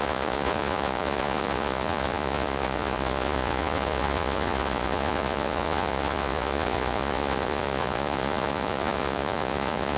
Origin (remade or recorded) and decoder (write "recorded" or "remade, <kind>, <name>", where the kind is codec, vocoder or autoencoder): remade, vocoder, Vocos